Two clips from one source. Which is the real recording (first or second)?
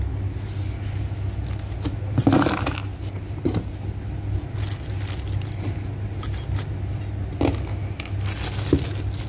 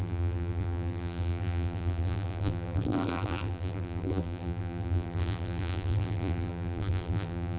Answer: first